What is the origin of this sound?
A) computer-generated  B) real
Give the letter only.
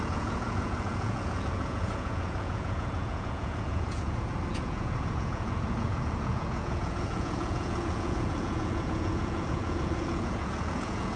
A